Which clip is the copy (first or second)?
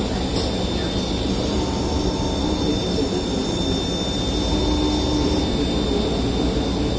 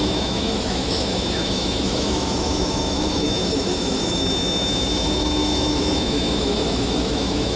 second